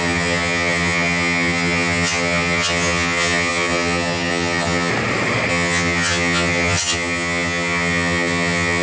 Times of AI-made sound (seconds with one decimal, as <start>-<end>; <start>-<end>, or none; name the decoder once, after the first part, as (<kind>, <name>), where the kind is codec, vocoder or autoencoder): 0.0-4.9 (vocoder, HiFi-GAN); 5.5-8.8